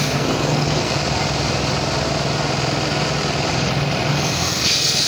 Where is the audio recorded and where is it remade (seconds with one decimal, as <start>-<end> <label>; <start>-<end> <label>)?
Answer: 0.0-1.0 remade; 1.0-4.1 recorded; 4.1-5.1 remade

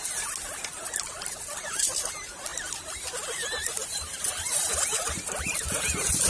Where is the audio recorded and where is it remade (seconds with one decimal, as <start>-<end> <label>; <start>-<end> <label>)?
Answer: 0.0-6.3 recorded

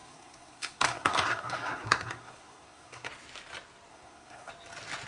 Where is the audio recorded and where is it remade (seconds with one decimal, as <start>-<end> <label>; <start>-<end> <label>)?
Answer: 0.0-3.1 remade; 3.1-3.9 recorded; 3.9-4.5 remade; 4.5-5.1 recorded

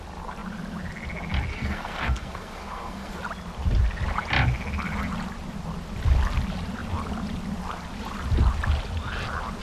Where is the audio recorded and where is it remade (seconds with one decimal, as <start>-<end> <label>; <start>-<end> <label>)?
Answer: 0.0-1.5 recorded; 1.5-3.2 remade; 3.2-9.6 recorded

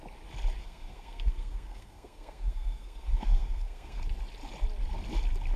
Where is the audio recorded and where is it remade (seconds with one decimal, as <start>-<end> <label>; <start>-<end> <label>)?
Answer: 0.0-0.6 recorded; 0.6-4.0 remade; 4.0-5.6 recorded

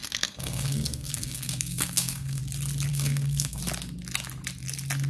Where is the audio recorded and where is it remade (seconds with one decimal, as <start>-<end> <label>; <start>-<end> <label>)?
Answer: 0.0-2.4 remade; 2.4-2.9 recorded; 2.9-3.6 remade; 3.6-5.1 recorded

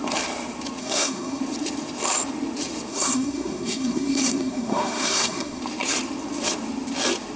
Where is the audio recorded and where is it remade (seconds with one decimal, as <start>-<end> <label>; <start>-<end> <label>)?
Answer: 0.0-0.8 recorded; 0.8-1.4 remade; 1.4-2.9 recorded; 2.9-5.6 remade; 5.6-7.4 recorded